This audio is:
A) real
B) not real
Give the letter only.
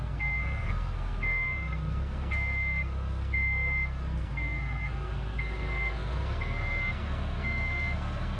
B